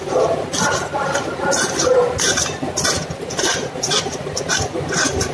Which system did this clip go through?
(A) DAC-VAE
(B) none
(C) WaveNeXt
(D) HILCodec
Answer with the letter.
B